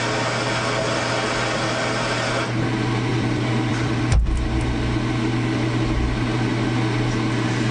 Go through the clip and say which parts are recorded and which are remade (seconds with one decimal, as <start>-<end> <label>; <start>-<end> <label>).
0.0-3.1 recorded; 3.1-4.0 remade; 4.0-7.7 recorded